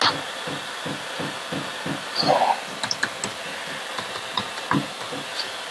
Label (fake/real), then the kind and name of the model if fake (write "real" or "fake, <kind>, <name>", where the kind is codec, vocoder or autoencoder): real